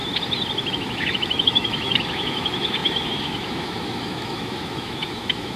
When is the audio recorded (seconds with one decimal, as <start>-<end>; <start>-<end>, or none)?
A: 0.0-0.7